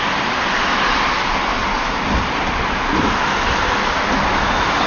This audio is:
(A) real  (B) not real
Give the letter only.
A